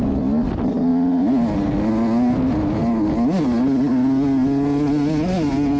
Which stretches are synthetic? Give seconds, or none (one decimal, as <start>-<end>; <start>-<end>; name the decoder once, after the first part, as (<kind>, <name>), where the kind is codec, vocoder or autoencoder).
none